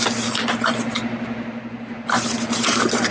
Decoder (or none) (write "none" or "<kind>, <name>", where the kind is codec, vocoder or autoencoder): none